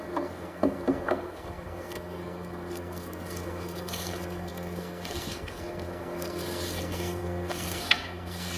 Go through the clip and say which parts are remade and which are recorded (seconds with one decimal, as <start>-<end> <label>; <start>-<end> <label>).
0.0-8.6 remade